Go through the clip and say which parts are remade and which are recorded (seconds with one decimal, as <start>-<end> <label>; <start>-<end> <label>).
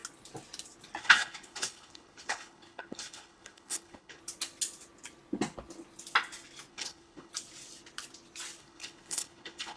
0.0-1.0 recorded; 1.0-4.2 remade; 4.2-6.7 recorded; 6.7-7.3 remade; 7.3-8.6 recorded; 8.6-9.8 remade